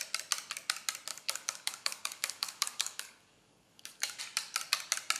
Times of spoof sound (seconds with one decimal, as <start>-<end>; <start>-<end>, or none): 1.1-4.2